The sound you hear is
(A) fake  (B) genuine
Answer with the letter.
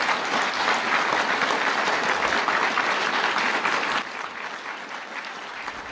B